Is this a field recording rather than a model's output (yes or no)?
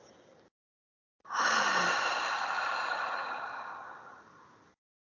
yes